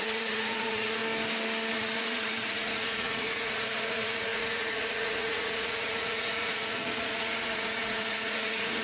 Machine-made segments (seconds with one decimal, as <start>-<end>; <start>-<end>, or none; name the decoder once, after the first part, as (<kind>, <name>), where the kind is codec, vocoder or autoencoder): 0.0-1.0 (vocoder, Vocos); 1.7-8.8